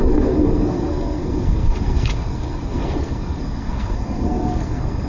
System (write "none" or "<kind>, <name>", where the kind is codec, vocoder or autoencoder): codec, SNAC